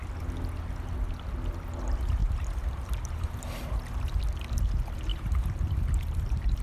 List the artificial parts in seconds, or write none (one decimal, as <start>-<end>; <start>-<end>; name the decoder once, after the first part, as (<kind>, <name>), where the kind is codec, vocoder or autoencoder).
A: 2.2-3.7 (vocoder, BigVGAN v2); 5.1-6.6